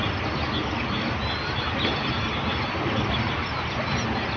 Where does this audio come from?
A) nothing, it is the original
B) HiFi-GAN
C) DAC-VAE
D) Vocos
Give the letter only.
A